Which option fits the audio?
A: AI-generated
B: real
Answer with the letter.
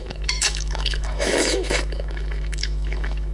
A